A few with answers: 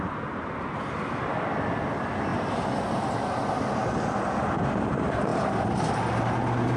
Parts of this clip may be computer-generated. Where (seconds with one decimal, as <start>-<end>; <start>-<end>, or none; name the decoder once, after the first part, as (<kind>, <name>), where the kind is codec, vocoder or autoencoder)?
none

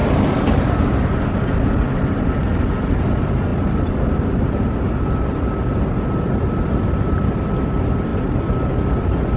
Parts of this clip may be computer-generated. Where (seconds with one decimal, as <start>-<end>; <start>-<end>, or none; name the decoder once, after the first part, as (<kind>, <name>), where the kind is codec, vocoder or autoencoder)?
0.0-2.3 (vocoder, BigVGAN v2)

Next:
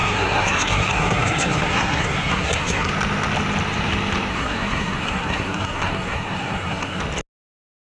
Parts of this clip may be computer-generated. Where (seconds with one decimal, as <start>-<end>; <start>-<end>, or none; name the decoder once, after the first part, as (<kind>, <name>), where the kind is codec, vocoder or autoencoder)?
0.0-2.9 (codec, SNAC); 4.3-7.0

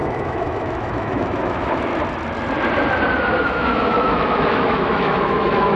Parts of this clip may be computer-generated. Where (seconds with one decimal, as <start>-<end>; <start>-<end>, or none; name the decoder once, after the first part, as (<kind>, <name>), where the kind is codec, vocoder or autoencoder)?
0.0-1.9 (autoencoder, DAC-VAE); 3.4-5.8

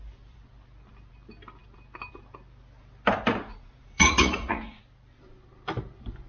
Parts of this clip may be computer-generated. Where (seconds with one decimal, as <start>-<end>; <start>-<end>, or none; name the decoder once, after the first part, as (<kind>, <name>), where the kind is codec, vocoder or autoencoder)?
3.5-4.8 (vocoder, Vocos)

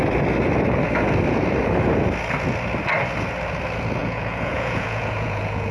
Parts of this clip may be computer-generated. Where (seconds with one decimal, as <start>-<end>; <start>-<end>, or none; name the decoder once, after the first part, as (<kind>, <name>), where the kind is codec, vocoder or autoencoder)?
4.0-5.7 (vocoder, Vocos)